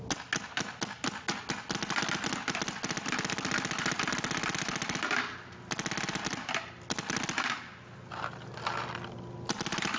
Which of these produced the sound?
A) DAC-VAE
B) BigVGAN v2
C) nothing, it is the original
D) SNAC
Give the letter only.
C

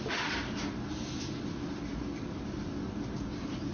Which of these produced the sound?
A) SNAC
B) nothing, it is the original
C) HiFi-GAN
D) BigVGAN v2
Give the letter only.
B